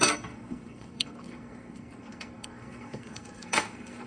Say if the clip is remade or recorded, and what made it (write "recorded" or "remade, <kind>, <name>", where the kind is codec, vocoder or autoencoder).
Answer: remade, codec, SNAC